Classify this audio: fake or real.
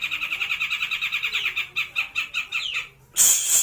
real